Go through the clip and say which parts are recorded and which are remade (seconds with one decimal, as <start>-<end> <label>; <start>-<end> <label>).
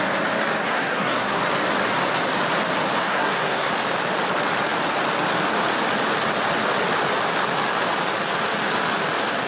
0.0-0.6 recorded; 0.6-1.4 remade; 1.4-3.0 recorded; 3.0-3.7 remade; 3.7-9.5 recorded